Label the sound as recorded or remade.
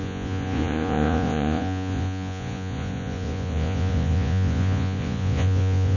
remade